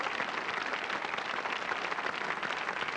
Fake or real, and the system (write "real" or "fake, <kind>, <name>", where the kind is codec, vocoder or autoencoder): real